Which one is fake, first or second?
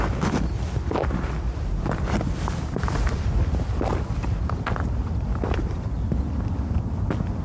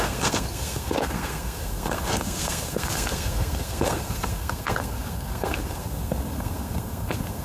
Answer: second